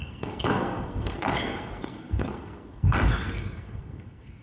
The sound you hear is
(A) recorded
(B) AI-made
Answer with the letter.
B